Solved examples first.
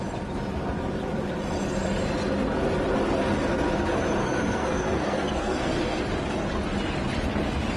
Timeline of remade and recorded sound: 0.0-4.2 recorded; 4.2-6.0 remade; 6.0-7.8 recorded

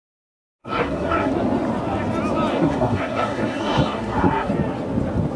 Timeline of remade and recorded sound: 0.0-0.6 recorded; 0.6-1.3 remade; 1.3-2.5 recorded; 2.5-4.5 remade; 4.5-5.4 recorded

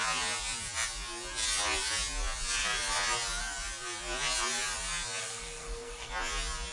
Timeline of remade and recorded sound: 0.0-5.2 recorded; 5.2-6.1 remade; 6.1-6.7 recorded

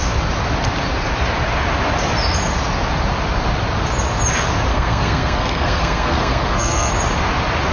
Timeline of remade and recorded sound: 0.0-4.7 recorded; 4.7-6.9 remade; 6.9-7.7 recorded

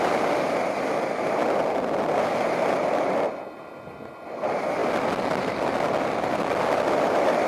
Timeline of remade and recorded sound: 0.0-7.5 recorded

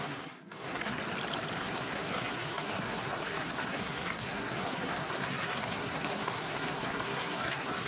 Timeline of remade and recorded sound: 0.0-1.0 remade; 1.0-1.6 recorded; 1.6-7.9 remade

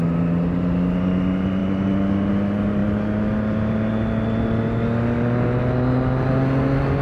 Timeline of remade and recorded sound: 0.0-7.0 recorded